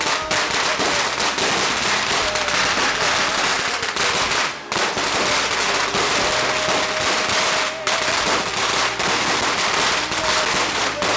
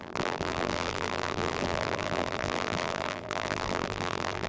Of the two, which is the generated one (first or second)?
second